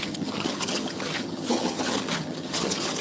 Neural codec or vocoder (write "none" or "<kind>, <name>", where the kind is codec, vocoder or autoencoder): vocoder, HiFi-GAN